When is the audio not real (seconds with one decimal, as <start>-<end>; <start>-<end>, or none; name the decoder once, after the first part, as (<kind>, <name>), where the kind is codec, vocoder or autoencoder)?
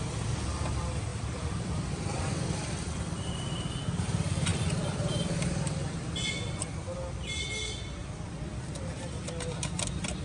1.1-3.7 (vocoder, BigVGAN v2); 4.5-5.9